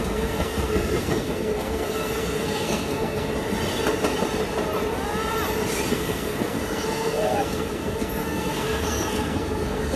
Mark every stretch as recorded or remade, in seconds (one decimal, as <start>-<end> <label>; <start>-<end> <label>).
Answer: 0.0-3.3 remade; 3.3-5.9 recorded; 5.9-10.0 remade